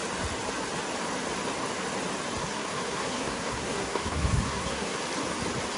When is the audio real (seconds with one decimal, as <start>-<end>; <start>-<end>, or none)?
0.0-2.4; 5.0-5.8